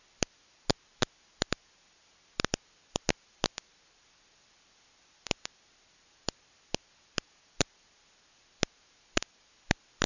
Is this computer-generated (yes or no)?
no